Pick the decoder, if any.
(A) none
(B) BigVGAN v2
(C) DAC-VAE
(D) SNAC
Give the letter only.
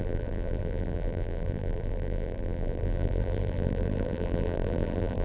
B